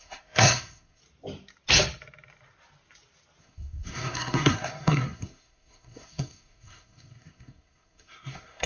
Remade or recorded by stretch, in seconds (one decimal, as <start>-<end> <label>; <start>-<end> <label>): 0.0-1.0 remade; 1.0-3.4 recorded; 3.4-8.7 remade

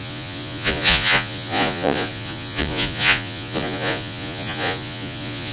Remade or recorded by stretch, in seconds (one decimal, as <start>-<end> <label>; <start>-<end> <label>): 0.0-5.5 remade